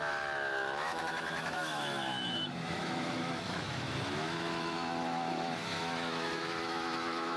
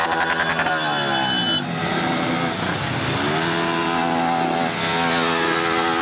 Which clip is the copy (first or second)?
first